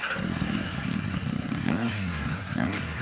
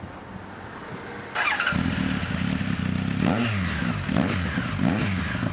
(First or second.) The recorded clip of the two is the second